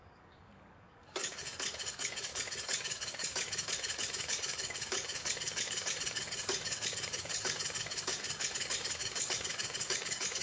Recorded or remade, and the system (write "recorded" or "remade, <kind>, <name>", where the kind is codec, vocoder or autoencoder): remade, codec, DAC